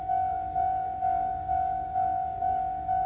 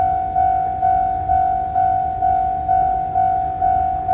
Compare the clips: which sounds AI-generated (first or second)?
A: first